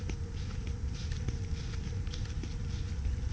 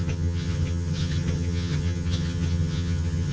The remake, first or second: second